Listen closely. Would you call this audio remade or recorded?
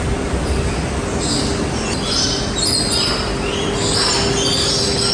recorded